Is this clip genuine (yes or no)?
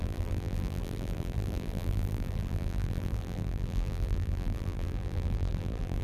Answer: no